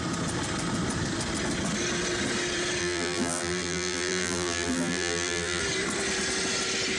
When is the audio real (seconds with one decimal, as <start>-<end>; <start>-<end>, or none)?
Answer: 0.0-2.8; 5.6-7.0

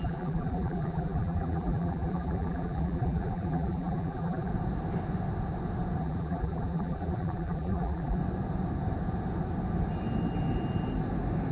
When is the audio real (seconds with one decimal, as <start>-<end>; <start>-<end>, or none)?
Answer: 4.5-6.0; 8.2-11.5

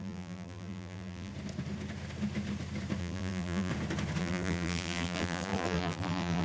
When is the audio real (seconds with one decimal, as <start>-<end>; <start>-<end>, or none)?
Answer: 1.3-3.0; 3.7-4.2